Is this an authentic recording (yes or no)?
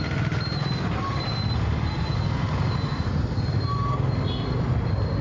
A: yes